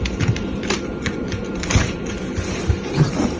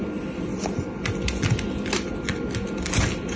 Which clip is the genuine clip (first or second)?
second